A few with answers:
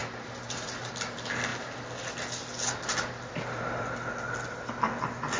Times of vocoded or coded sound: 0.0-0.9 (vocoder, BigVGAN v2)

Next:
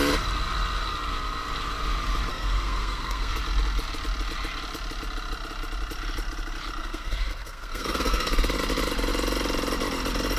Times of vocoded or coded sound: 2.3-3.4 (codec, SNAC); 6.8-8.3